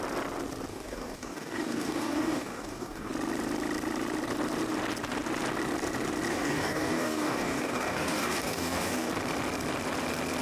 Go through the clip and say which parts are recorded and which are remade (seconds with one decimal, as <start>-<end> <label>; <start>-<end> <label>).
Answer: 0.0-0.7 recorded; 0.7-3.1 remade; 3.1-6.3 recorded; 6.3-9.1 remade; 9.1-10.4 recorded